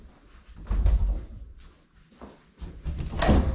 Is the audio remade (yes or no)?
yes